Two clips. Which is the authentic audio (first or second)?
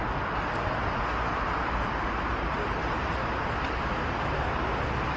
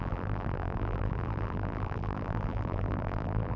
first